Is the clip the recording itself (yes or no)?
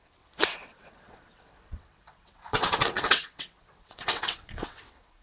no